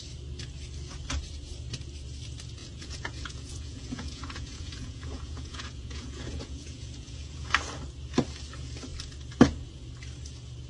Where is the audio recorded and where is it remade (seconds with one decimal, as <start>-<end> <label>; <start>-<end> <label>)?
0.0-2.6 recorded; 2.6-7.5 remade; 7.5-10.7 recorded